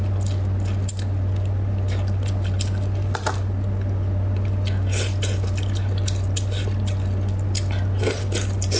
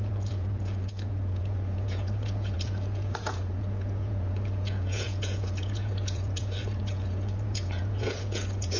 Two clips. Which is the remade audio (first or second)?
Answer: second